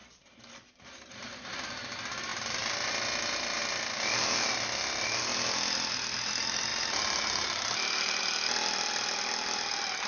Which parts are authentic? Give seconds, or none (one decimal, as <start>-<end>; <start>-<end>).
1.6-6.7; 8.2-10.1